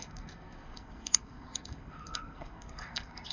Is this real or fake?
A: fake